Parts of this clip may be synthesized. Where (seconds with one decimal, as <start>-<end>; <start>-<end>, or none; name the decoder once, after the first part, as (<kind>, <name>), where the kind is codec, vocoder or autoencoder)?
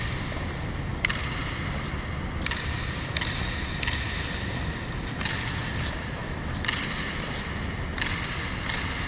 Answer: none